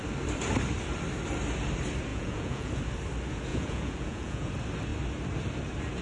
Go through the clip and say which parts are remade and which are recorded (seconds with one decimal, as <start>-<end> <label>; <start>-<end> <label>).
0.0-2.1 recorded; 2.1-2.7 remade; 2.7-3.5 recorded; 3.5-4.5 remade; 4.5-6.0 recorded